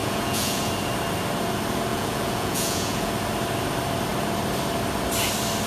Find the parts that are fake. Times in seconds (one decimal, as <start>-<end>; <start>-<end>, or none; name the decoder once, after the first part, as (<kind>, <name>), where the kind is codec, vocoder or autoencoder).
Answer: 0.0-0.7 (vocoder, Vocos); 1.9-3.1